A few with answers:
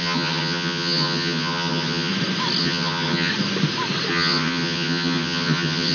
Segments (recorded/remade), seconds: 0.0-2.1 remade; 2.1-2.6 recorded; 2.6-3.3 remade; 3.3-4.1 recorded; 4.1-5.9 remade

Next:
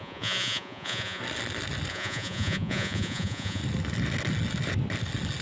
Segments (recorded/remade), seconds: 0.0-1.2 remade; 1.2-1.9 recorded; 1.9-3.6 remade; 3.6-5.4 recorded

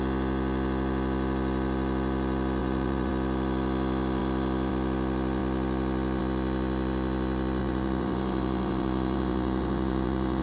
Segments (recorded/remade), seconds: 0.0-2.6 recorded; 2.6-3.1 remade; 3.1-7.6 recorded; 7.6-10.4 remade

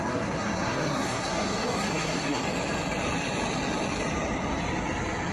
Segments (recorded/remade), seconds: 0.0-2.4 remade; 2.4-5.3 recorded